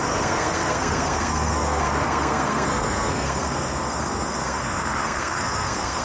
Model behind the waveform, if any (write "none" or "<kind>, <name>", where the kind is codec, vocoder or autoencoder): codec, SNAC